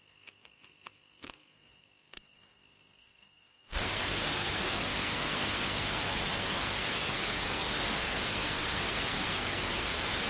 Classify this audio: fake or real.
fake